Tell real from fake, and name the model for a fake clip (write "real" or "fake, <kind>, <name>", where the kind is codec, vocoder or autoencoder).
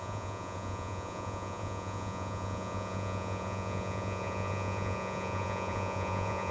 fake, vocoder, Vocos